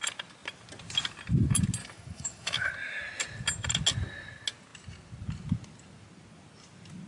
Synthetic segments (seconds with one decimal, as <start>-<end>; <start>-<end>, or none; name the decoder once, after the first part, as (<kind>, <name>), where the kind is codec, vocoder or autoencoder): 1.8-2.7 (autoencoder, DAC-VAE)

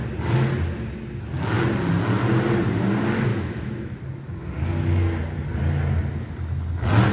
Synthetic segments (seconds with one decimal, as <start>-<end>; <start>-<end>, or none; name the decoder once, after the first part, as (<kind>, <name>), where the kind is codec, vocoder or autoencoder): 3.3-4.0 (autoencoder, DAC-VAE)

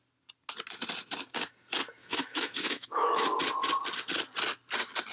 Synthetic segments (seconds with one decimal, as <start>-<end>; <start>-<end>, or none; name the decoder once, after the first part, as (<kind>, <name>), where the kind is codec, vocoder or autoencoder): 2.0-3.4 (autoencoder, DAC-VAE)

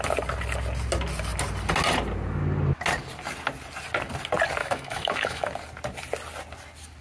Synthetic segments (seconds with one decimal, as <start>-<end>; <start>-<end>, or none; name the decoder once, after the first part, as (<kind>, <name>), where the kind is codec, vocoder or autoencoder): 4.6-5.5 (autoencoder, DAC-VAE)

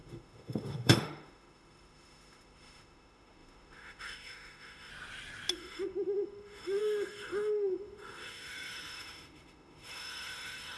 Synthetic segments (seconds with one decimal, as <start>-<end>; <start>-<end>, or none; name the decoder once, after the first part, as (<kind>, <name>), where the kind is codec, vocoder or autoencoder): 0.0-4.9 (autoencoder, DAC-VAE); 5.5-10.8

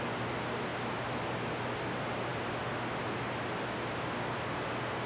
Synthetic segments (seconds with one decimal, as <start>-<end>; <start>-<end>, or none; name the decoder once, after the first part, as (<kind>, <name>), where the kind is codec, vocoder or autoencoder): none

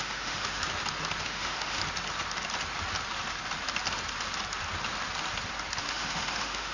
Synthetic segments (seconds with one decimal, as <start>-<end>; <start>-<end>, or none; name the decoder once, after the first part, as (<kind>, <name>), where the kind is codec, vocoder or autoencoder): 0.0-0.6 (autoencoder, DAC-VAE); 1.2-1.8; 5.8-6.7

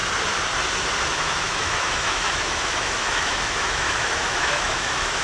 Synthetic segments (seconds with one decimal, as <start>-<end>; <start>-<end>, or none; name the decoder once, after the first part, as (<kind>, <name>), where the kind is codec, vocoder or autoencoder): 1.1-5.2 (autoencoder, DAC-VAE)